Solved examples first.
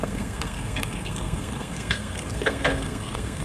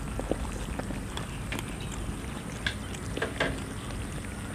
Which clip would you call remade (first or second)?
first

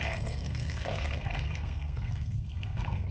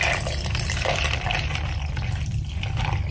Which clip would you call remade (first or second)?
first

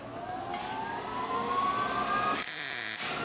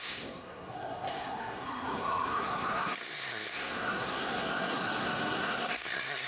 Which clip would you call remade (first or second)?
second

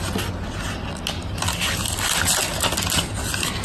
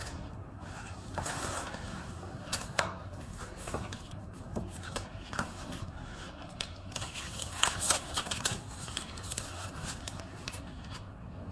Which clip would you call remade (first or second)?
second